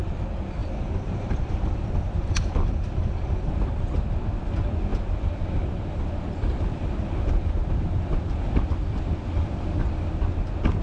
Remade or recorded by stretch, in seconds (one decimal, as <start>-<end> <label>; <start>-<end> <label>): 0.0-0.6 recorded; 0.6-3.5 remade; 3.5-10.8 recorded